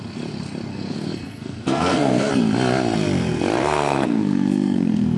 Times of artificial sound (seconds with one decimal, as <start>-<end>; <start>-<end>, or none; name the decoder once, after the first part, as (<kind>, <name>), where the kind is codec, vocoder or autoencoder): 0.7-2.3 (codec, SNAC); 3.6-5.2